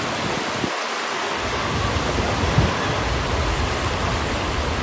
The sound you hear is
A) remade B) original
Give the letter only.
B